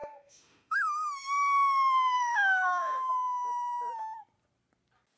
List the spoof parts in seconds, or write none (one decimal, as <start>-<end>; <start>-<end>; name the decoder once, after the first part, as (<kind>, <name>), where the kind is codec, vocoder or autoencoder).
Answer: 0.0-3.1 (autoencoder, DAC-VAE)